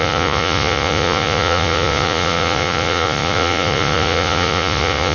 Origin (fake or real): fake